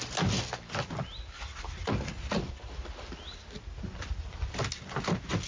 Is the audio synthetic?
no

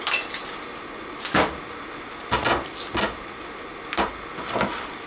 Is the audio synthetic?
no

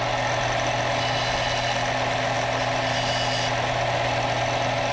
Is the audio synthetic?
no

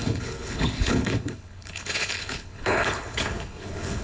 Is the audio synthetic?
yes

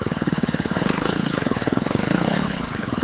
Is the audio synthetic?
yes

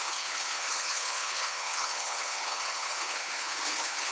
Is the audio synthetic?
yes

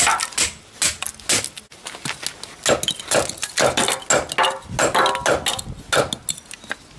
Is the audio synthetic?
no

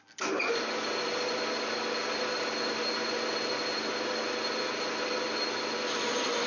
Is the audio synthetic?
no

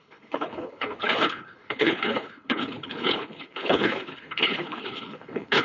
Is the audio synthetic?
yes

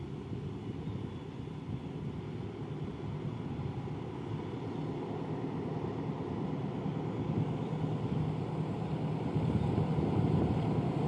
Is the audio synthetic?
no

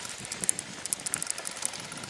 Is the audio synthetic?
no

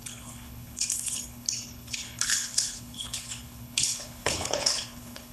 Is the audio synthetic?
yes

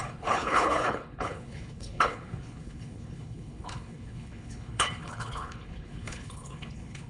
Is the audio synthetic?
yes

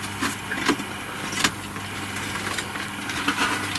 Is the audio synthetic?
no